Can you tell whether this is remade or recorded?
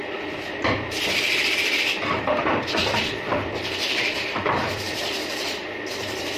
remade